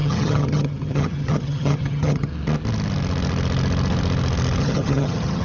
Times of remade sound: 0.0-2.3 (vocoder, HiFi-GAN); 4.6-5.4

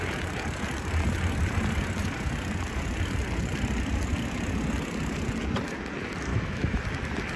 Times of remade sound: 6.3-6.8 (autoencoder, DAC-VAE)

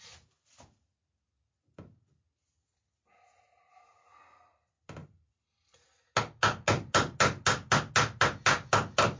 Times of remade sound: none